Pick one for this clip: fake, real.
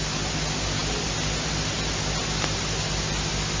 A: real